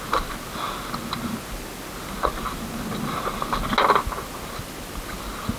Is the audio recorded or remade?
recorded